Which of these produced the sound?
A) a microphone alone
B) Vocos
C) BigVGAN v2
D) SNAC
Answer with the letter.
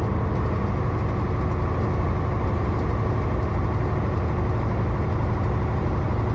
A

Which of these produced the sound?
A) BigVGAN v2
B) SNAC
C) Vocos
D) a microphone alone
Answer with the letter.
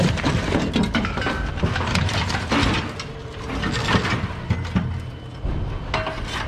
D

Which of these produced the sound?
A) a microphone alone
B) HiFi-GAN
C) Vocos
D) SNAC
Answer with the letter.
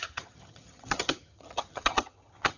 B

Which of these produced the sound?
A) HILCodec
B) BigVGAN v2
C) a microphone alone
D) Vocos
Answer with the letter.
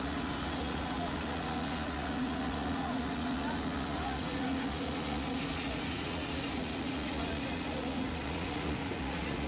D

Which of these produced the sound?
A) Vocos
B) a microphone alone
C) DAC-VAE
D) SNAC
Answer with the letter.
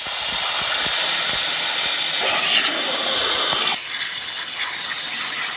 B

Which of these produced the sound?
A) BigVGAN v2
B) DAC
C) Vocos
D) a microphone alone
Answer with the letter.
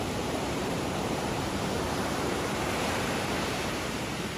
A